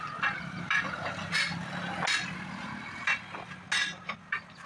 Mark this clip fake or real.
real